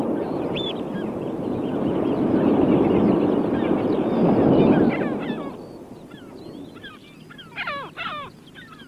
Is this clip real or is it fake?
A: real